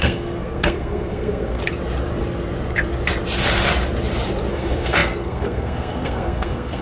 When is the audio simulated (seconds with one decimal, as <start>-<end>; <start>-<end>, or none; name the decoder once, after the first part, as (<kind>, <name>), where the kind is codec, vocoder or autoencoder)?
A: 0.0-1.6 (codec, SNAC); 4.5-6.8